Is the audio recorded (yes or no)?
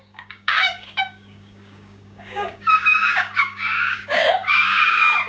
no